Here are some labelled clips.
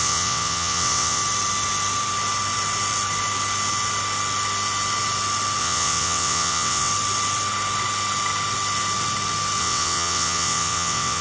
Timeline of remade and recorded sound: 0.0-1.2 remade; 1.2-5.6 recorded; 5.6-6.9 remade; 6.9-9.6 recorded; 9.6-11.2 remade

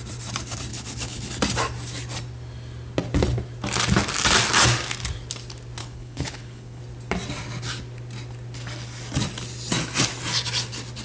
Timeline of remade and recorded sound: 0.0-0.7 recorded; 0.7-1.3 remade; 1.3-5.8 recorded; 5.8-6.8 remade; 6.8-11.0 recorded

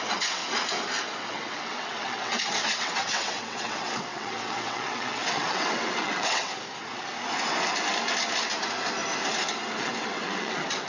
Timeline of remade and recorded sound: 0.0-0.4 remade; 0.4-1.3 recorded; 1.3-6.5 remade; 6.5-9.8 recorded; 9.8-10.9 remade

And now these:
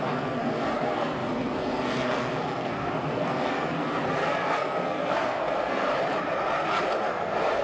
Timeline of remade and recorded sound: 0.0-5.9 remade; 5.9-7.0 recorded; 7.0-7.6 remade